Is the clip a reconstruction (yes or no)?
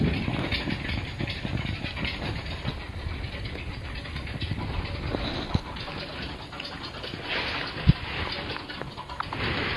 no